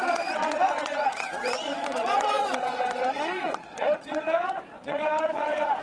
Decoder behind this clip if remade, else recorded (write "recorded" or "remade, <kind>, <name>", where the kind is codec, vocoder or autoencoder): remade, vocoder, Vocos